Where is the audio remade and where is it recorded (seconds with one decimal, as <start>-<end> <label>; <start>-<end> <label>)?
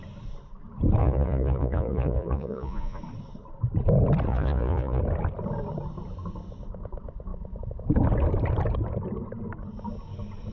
0.0-1.0 recorded; 1.0-3.0 remade; 3.0-4.3 recorded; 4.3-5.0 remade; 5.0-10.5 recorded